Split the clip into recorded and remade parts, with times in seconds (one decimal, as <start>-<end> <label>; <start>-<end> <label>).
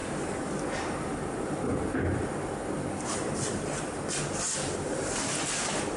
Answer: 0.0-3.6 remade; 3.6-6.0 recorded